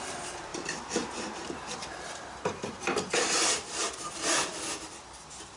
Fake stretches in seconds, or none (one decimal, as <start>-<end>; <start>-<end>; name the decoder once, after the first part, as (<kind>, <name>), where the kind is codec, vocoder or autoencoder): 0.5-3.6 (vocoder, BigVGAN v2)